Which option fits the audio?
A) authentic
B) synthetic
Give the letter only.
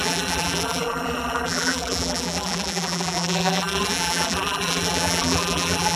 B